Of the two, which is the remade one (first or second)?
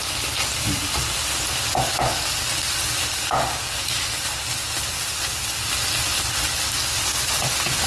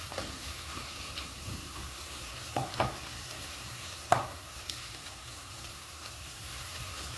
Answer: second